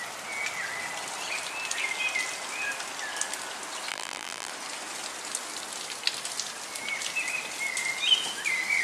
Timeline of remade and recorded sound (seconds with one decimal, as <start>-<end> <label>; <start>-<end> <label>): 0.0-3.9 recorded; 3.9-4.5 remade; 4.5-8.8 recorded